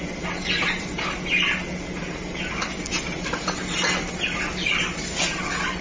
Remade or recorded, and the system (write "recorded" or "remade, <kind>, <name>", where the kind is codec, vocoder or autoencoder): recorded